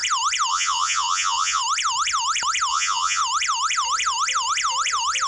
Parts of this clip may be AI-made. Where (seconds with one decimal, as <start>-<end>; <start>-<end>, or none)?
0.5-1.6; 2.7-3.2